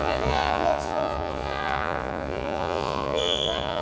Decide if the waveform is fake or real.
fake